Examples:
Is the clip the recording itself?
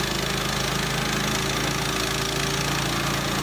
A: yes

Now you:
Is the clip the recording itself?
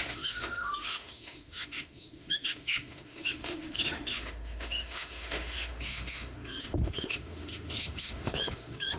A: no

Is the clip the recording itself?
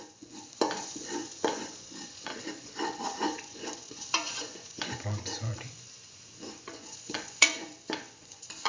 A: no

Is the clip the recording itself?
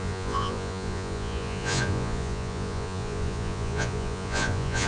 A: no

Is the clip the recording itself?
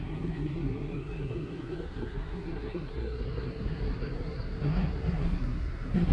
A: no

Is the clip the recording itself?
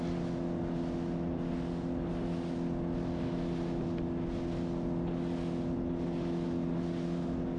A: yes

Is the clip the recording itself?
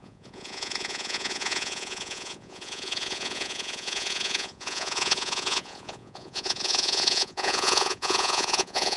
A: no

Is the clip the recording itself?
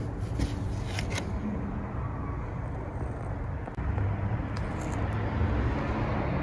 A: yes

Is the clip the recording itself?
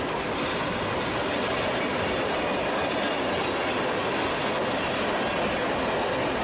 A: yes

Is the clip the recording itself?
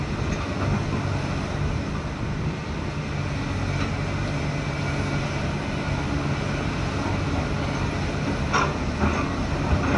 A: yes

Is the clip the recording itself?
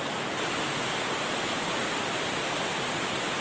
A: yes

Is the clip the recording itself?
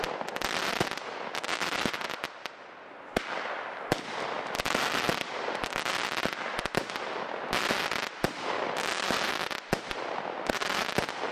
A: yes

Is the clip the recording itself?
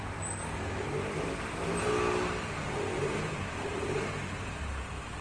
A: yes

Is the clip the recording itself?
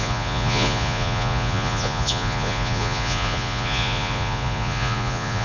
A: no